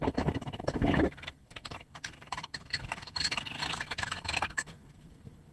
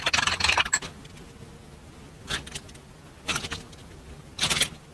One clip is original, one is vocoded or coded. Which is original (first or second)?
second